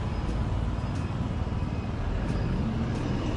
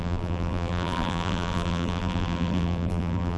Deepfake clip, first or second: second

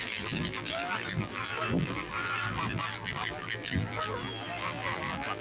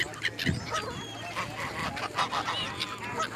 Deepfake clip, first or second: first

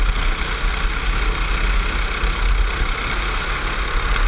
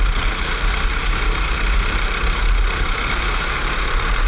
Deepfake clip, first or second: second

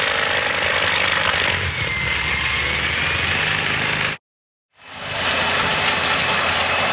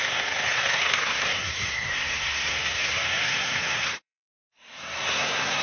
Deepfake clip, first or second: second